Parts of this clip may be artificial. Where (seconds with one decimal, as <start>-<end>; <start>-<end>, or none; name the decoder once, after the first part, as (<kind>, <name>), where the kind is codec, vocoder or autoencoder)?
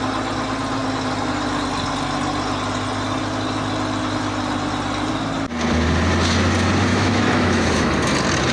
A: 6.9-7.9 (autoencoder, DAC-VAE)